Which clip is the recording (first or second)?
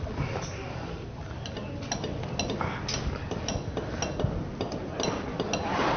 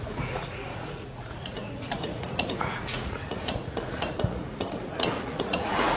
first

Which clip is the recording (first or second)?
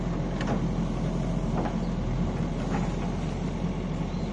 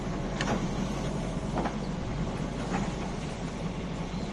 first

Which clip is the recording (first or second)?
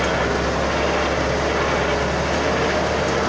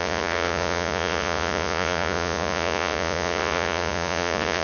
first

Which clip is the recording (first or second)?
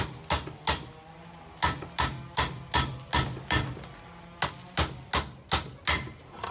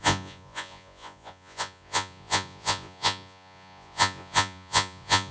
first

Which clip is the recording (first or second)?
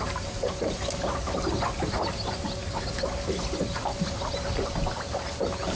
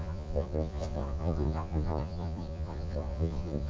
first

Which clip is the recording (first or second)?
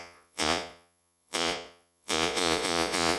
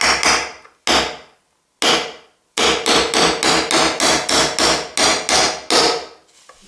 second